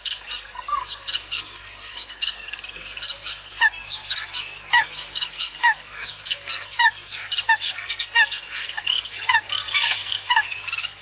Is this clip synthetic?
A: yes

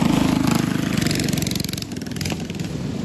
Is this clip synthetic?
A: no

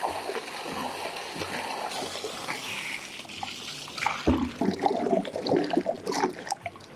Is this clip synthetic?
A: no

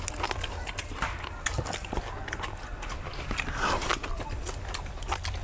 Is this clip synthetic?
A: no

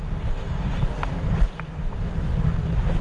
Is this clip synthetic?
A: no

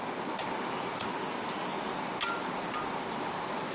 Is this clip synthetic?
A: no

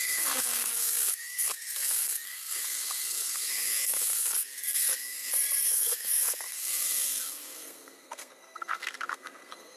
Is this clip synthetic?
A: yes